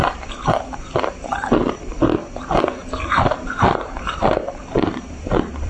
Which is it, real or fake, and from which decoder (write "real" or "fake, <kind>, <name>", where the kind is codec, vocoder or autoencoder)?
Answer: fake, vocoder, BigVGAN v2